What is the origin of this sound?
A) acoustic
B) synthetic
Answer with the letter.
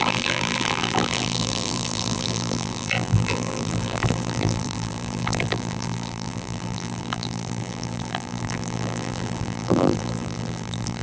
B